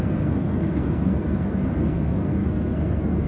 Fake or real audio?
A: fake